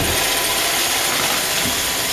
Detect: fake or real real